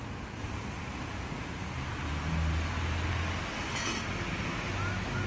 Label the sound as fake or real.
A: real